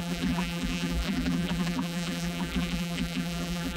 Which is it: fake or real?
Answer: fake